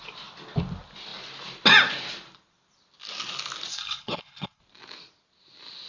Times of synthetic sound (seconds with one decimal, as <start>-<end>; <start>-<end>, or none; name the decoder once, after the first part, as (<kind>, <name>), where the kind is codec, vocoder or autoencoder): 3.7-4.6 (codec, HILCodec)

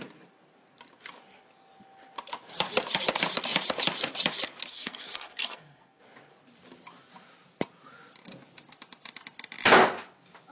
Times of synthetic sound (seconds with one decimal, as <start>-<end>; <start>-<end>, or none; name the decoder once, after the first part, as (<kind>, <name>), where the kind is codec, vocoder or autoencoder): 4.7-6.0 (codec, SNAC)

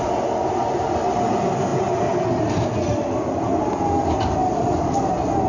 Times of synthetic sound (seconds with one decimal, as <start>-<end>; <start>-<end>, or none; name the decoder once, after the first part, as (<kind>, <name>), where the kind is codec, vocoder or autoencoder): 4.4-5.0 (vocoder, BigVGAN v2)